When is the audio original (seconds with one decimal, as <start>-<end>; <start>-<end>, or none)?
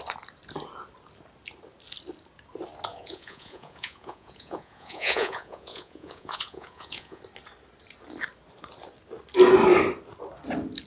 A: 0.0-2.9; 7.2-10.9